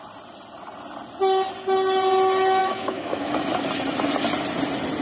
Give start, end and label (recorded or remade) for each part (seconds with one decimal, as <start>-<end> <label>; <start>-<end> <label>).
0.0-2.6 recorded; 2.6-3.3 remade; 3.3-5.0 recorded